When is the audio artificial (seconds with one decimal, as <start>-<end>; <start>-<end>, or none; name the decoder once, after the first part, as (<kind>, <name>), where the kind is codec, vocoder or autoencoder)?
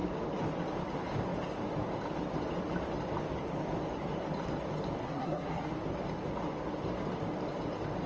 5.0-5.7 (codec, SNAC)